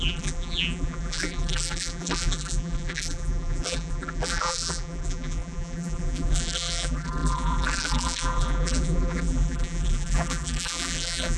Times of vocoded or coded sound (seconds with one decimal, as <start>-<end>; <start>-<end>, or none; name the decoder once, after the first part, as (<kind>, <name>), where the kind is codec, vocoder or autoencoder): 0.0-11.4 (vocoder, BigVGAN v2)